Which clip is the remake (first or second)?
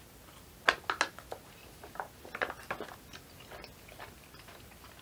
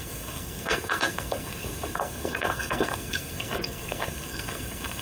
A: second